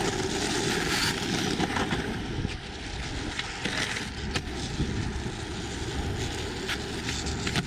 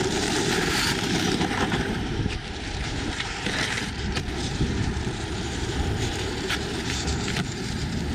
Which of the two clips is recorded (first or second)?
first